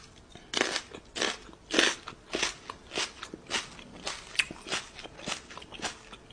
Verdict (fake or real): real